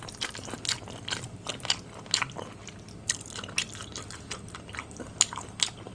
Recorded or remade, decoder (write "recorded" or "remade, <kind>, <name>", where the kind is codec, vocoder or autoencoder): recorded